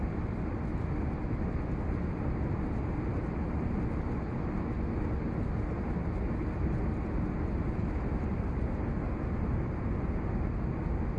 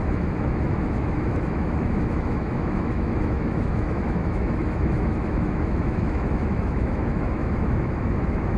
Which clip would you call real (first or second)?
first